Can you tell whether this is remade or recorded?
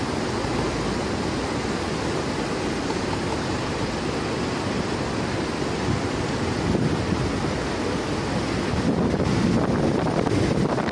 recorded